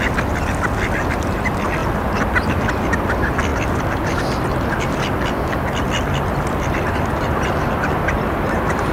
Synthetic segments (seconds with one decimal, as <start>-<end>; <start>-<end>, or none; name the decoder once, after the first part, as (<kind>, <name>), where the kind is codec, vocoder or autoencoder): none